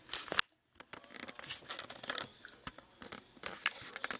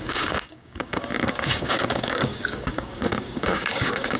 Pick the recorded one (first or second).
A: first